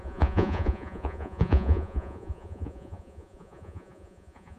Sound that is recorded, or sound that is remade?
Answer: remade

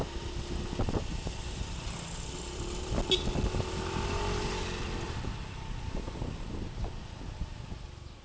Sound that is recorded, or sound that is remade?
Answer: recorded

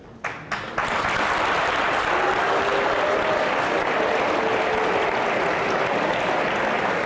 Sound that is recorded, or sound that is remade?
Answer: recorded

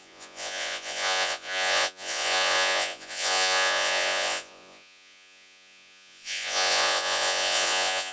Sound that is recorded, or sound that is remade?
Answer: remade